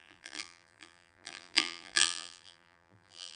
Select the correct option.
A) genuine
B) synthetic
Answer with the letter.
B